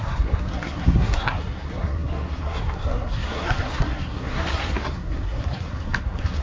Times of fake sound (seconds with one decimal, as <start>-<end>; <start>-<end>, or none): 0.0-6.4